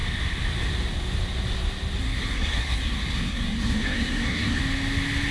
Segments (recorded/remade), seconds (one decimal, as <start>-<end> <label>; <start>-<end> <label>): 0.0-2.0 recorded; 2.0-4.6 remade; 4.6-5.3 recorded